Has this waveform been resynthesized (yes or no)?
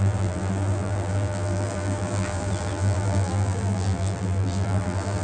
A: yes